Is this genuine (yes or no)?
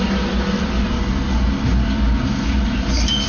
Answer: yes